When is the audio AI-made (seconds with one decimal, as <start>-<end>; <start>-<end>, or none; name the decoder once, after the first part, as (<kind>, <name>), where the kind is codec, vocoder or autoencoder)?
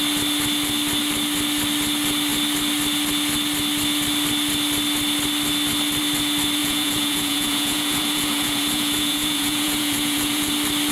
6.6-10.5 (vocoder, Vocos)